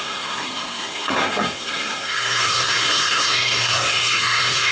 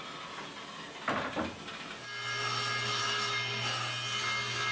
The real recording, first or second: second